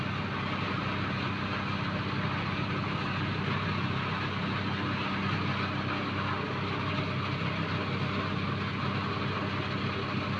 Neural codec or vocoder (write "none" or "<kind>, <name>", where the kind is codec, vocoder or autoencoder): none